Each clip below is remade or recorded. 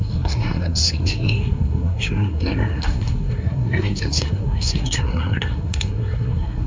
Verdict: remade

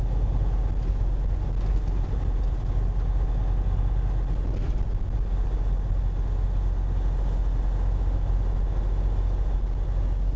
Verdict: recorded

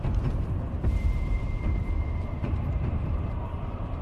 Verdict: remade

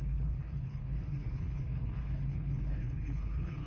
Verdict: remade